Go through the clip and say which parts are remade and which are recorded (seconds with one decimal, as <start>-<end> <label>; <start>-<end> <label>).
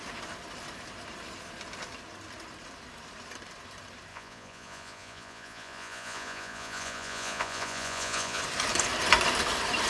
0.0-4.1 recorded; 4.1-8.4 remade; 8.4-9.9 recorded